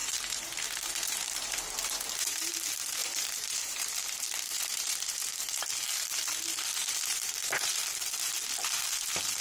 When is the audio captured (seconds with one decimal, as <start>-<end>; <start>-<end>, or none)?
2.5-3.0; 5.6-6.8; 7.7-9.4